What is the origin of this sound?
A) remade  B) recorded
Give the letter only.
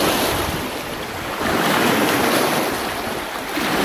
B